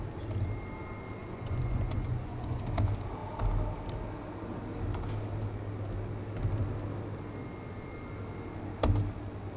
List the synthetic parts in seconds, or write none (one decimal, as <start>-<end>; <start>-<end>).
1.2-2.6